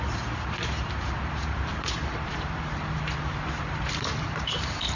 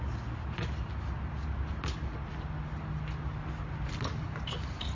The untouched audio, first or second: second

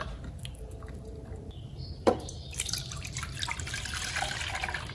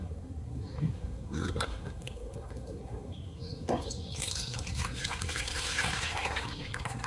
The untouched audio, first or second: first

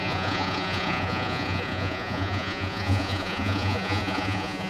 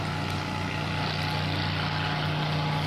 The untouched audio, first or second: second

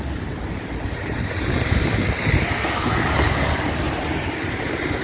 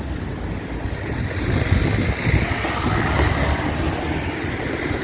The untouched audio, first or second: second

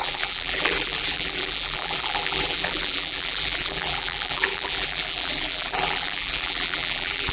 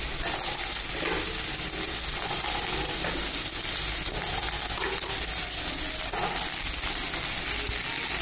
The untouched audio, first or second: second